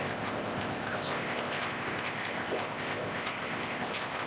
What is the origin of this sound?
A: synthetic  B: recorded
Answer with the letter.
A